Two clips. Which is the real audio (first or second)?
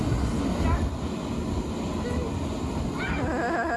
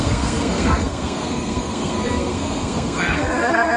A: first